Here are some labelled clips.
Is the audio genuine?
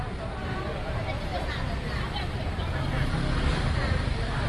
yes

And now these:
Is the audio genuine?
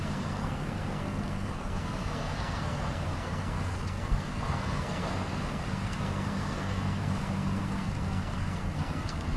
no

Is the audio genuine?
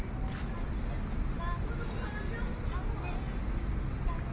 yes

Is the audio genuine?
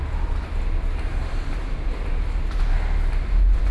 yes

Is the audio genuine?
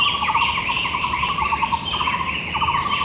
yes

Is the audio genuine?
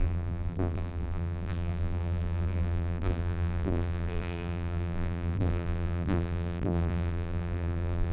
no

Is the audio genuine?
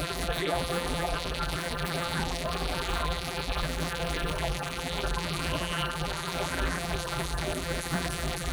no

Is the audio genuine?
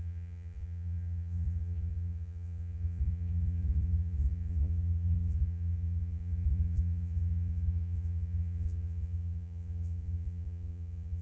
no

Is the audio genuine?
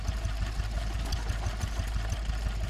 yes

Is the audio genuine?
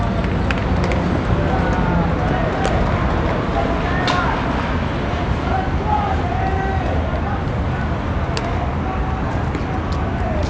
yes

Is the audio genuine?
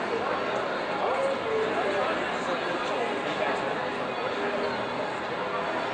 yes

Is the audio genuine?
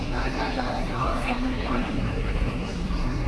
no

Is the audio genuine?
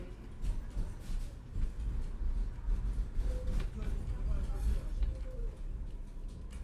yes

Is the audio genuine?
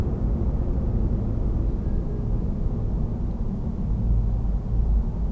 yes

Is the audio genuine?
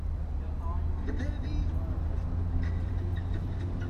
yes